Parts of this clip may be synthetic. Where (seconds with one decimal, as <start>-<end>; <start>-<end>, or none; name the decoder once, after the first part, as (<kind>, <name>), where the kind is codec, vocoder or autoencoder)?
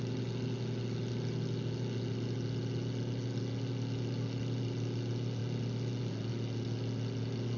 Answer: none